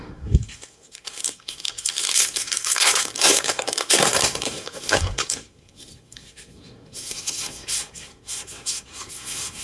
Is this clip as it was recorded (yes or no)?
no